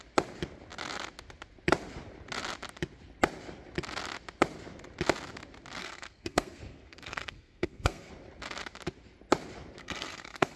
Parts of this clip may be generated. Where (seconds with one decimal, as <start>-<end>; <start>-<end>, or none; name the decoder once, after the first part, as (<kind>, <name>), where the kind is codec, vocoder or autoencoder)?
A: 5.8-8.1 (codec, SNAC); 9.8-10.6